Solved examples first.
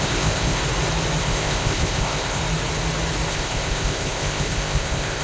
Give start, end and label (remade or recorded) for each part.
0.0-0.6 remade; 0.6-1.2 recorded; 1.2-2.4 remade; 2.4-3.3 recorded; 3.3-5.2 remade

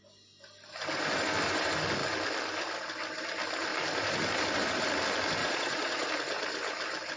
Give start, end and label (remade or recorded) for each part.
0.0-5.4 recorded; 5.4-6.1 remade; 6.1-7.2 recorded

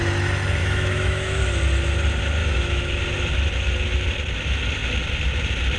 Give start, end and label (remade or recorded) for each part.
0.0-0.6 recorded; 0.6-1.4 remade; 1.4-2.4 recorded; 2.4-3.0 remade; 3.0-5.8 recorded